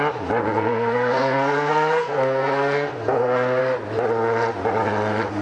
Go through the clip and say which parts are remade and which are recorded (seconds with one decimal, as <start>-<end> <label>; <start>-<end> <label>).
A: 0.0-0.4 recorded; 0.4-3.6 remade; 3.6-5.4 recorded